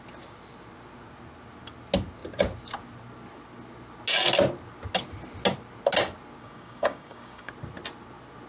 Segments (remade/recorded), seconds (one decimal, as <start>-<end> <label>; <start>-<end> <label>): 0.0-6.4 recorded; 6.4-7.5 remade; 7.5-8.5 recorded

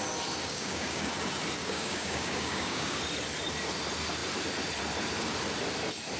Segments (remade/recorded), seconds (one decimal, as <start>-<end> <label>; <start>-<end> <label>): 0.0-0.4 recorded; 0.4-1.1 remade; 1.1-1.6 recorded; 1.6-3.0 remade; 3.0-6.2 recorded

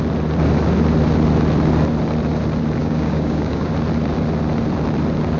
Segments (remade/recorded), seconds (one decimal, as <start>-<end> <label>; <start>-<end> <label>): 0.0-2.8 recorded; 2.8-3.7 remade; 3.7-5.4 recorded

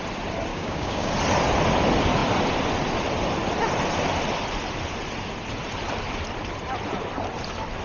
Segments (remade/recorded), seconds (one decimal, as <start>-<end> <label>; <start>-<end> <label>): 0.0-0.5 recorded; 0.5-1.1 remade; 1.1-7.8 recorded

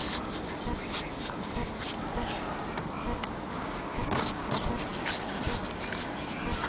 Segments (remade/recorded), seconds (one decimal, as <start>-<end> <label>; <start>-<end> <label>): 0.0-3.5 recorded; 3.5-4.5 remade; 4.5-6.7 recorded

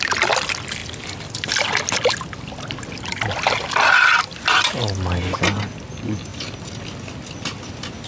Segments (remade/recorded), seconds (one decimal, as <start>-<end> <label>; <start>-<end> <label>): 0.0-8.1 recorded

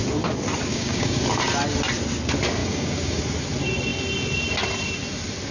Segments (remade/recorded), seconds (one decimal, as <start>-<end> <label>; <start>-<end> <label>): 0.0-0.7 recorded; 0.7-1.2 remade; 1.2-2.6 recorded; 2.6-3.2 remade; 3.2-5.5 recorded